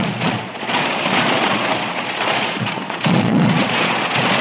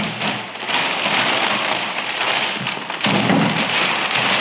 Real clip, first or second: second